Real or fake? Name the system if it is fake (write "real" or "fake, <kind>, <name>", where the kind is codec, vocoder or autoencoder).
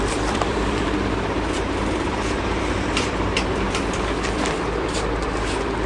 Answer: fake, vocoder, BigVGAN v2